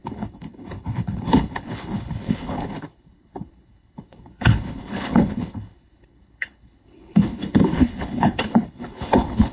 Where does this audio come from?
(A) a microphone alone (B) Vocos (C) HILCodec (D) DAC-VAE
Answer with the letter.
C